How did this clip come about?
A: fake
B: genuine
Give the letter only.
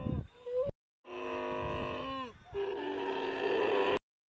B